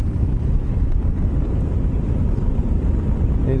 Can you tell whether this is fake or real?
real